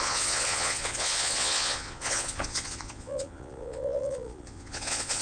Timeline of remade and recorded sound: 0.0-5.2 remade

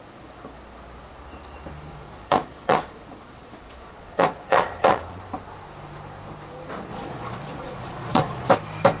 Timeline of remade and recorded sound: 0.0-1.9 recorded; 1.9-5.2 remade; 5.2-6.9 recorded; 6.9-8.5 remade; 8.5-9.0 recorded

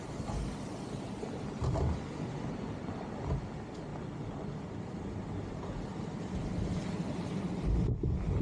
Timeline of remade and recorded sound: 0.0-8.4 recorded

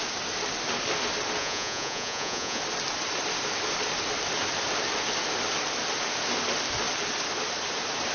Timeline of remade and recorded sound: 0.0-1.4 recorded; 1.4-2.6 remade; 2.6-8.1 recorded

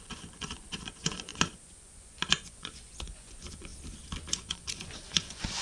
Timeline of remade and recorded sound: 0.0-3.7 remade; 3.7-4.3 recorded; 4.3-5.6 remade